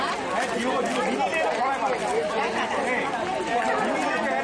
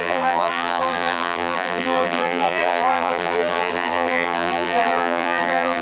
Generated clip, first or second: second